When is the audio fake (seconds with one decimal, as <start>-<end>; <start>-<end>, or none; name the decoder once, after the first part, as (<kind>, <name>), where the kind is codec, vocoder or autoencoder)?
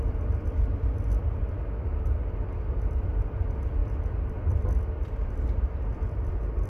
0.0-1.4 (vocoder, BigVGAN v2); 2.9-6.7